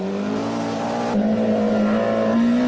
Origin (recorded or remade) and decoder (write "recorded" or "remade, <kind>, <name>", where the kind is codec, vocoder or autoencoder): recorded